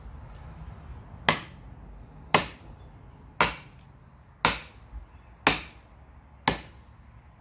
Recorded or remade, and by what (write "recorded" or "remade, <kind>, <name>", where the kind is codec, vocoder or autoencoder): recorded